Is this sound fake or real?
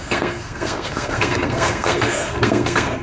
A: fake